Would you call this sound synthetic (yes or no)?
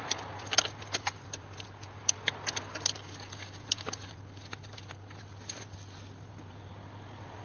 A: no